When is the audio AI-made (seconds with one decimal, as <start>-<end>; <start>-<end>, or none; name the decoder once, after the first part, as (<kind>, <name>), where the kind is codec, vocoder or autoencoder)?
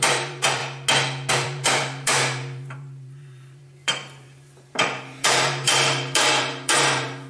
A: 0.0-0.6 (vocoder, BigVGAN v2); 1.3-7.3